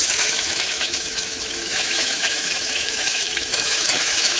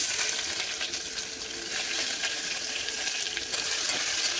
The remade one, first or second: first